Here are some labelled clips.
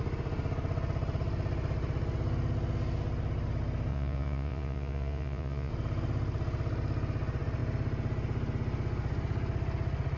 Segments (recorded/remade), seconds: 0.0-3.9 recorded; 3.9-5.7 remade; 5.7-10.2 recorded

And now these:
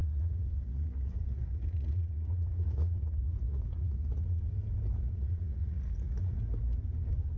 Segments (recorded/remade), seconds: 0.0-4.4 remade; 4.4-4.9 recorded; 4.9-6.4 remade; 6.4-7.4 recorded

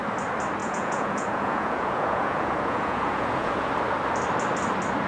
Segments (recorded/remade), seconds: 0.0-0.6 recorded; 0.6-3.7 remade; 3.7-5.1 recorded

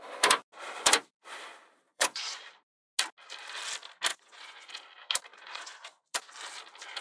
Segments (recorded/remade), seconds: 0.0-1.9 recorded; 1.9-2.4 remade; 2.4-4.1 recorded; 4.1-4.7 remade; 4.7-5.3 recorded; 5.3-6.0 remade; 6.0-7.0 recorded